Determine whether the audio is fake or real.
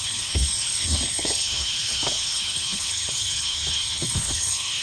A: fake